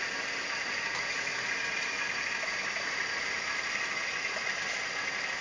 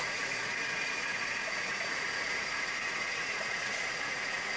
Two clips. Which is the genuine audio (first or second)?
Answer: first